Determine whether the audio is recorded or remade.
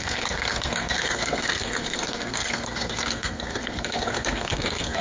remade